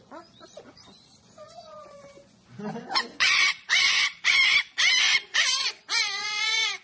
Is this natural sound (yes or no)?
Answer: no